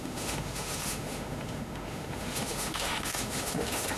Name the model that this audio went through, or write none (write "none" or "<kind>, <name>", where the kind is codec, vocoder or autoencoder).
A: autoencoder, DAC-VAE